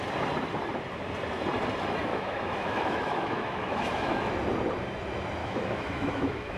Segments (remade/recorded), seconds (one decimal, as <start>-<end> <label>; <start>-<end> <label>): 0.0-2.1 recorded; 2.1-4.3 remade; 4.3-5.4 recorded; 5.4-6.6 remade